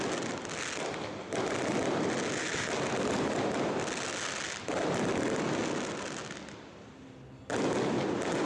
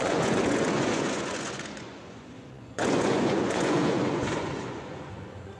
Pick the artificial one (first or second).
second